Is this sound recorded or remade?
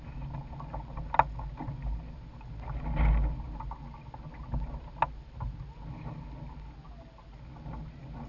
recorded